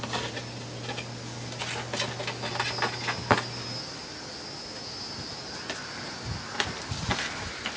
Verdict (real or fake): real